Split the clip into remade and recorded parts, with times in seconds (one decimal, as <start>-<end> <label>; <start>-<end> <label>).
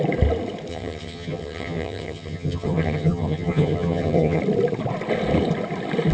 0.0-0.7 recorded; 0.7-4.4 remade; 4.4-6.1 recorded